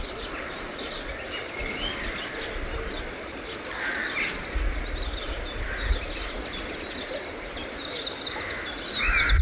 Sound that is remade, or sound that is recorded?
recorded